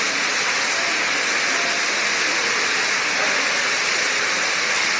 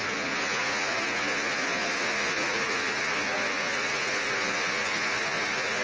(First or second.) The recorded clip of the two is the first